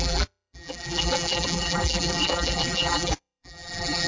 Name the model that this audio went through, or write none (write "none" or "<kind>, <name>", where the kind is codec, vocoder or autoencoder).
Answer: vocoder, BigVGAN v2